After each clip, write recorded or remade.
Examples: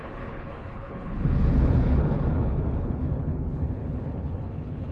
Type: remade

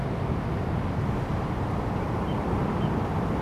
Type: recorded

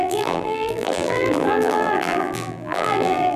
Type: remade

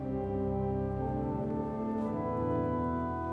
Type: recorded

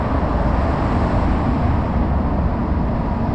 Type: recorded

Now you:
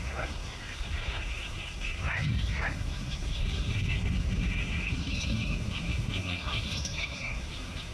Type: remade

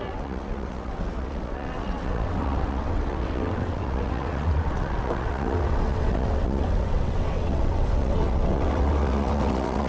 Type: remade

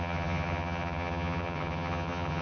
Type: remade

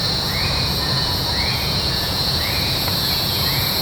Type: remade